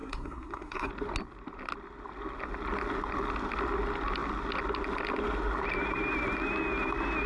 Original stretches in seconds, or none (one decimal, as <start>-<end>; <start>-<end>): 0.9-7.3